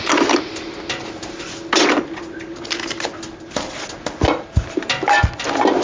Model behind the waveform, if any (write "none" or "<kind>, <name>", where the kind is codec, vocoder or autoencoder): none